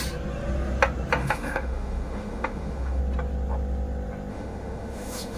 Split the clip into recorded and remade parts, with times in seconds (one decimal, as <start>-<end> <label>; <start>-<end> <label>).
0.0-1.2 recorded; 1.2-3.0 remade; 3.0-4.3 recorded; 4.3-5.4 remade